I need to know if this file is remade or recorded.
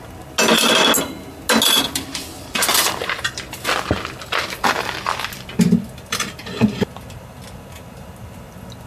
recorded